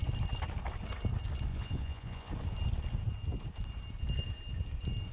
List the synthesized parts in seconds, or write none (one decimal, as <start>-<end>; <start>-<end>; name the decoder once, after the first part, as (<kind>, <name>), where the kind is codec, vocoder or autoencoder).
1.5-2.3 (vocoder, Vocos)